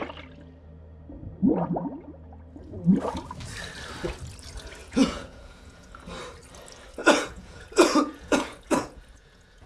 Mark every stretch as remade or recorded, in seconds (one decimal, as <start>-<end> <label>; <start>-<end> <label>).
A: 0.0-4.8 recorded; 4.8-5.9 remade; 5.9-7.0 recorded; 7.0-9.7 remade